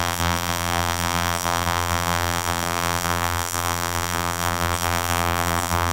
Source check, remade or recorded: remade